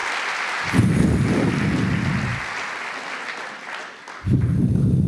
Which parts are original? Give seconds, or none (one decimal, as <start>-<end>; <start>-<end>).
0.0-5.1